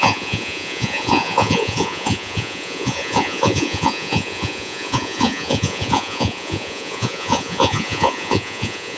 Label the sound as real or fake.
fake